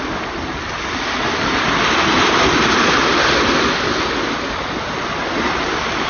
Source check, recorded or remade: recorded